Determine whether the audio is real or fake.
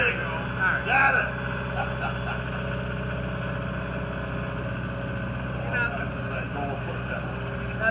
real